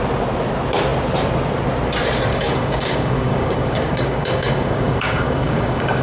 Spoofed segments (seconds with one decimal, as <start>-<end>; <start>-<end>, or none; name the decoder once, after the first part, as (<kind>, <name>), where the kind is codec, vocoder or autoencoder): 2.3-6.0 (codec, DAC)